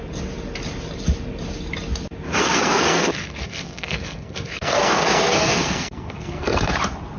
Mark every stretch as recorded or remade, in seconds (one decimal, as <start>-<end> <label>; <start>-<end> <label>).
0.0-2.4 recorded; 2.4-6.7 remade; 6.7-7.2 recorded

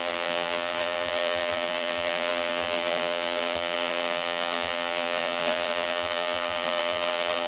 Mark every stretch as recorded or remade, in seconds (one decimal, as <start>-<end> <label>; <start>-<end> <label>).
0.0-7.5 remade

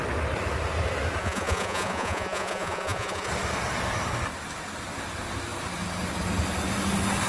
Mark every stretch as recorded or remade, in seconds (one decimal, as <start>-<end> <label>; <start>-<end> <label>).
0.0-1.2 recorded; 1.2-3.3 remade; 3.3-7.3 recorded

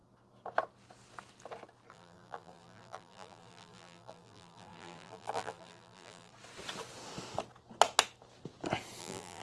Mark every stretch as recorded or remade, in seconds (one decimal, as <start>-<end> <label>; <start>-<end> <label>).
0.0-1.9 recorded; 1.9-6.3 remade; 6.3-9.0 recorded; 9.0-9.4 remade

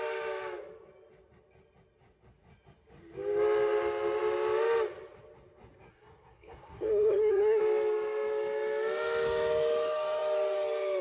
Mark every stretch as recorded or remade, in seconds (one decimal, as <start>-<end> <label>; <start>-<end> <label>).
0.0-5.9 recorded; 5.9-7.6 remade; 7.6-11.0 recorded

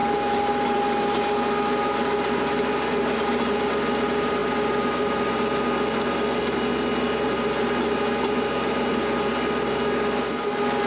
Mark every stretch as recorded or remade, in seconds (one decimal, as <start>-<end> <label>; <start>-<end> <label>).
0.0-10.9 recorded